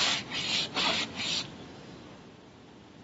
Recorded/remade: recorded